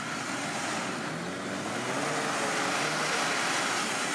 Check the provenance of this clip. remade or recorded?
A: recorded